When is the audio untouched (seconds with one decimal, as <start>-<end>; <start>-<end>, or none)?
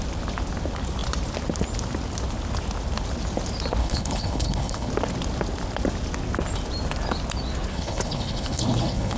0.0-3.8; 4.9-7.7